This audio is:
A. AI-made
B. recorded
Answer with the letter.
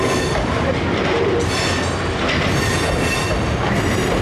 B